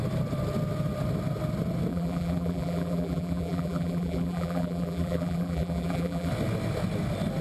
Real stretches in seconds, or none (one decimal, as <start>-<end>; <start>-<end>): 0.0-1.9; 6.3-7.4